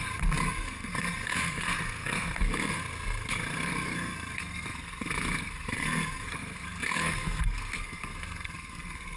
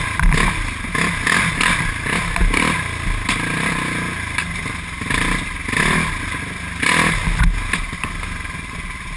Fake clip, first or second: first